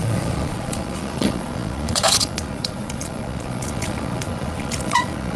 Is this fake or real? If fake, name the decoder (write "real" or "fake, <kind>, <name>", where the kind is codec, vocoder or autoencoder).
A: fake, vocoder, Vocos